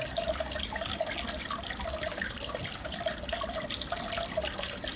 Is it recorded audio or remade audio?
recorded